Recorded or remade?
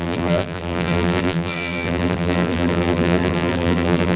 remade